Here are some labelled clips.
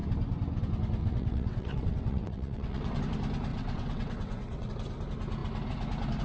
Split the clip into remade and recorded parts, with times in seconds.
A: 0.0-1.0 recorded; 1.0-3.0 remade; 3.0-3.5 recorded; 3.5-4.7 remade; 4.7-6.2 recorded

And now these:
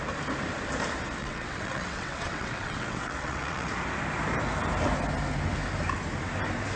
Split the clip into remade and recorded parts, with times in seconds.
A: 0.0-1.2 recorded; 1.2-3.7 remade; 3.7-6.8 recorded